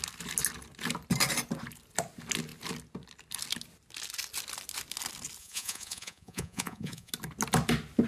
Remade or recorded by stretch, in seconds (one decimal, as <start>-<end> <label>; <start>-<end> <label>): 0.0-5.4 recorded; 5.4-7.1 remade; 7.1-8.1 recorded